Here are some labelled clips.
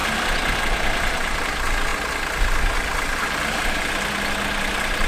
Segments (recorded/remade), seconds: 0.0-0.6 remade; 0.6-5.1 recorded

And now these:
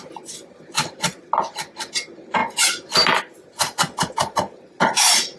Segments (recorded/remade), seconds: 0.0-5.4 recorded

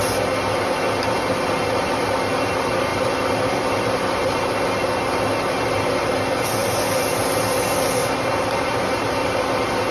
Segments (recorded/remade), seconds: 0.0-2.9 recorded; 2.9-4.6 remade; 4.6-8.0 recorded; 8.0-9.4 remade; 9.4-9.9 recorded